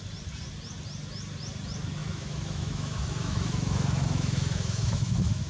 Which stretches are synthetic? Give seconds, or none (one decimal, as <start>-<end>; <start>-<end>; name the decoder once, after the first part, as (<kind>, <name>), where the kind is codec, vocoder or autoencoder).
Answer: 2.0-5.5 (autoencoder, DAC-VAE)